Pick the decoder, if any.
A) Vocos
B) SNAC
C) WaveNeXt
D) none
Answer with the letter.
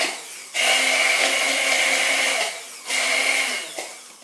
D